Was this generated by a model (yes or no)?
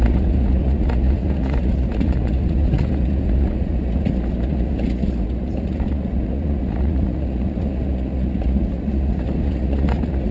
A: yes